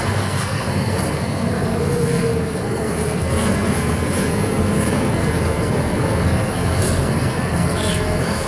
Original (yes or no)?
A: no